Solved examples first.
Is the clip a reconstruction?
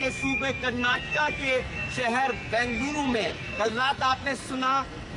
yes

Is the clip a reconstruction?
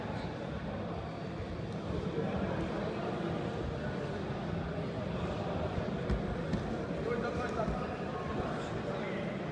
no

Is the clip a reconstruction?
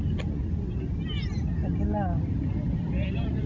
no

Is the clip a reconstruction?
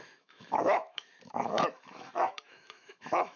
yes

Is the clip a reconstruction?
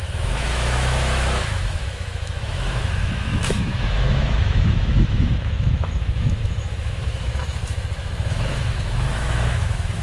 yes